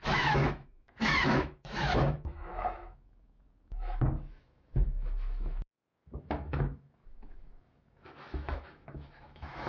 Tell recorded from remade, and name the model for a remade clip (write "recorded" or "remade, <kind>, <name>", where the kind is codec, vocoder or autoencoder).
remade, autoencoder, DAC-VAE